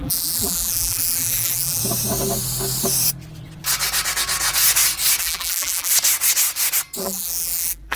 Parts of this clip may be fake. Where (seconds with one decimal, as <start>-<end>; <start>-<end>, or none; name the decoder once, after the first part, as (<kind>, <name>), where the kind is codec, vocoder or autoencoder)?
0.0-1.8 (vocoder, BigVGAN v2); 5.2-5.9; 7.0-8.0